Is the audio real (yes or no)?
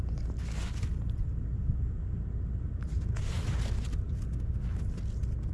yes